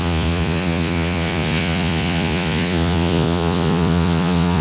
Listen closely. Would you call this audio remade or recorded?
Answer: remade